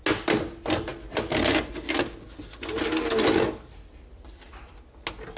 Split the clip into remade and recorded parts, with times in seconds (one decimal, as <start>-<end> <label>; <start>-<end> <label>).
0.0-5.4 recorded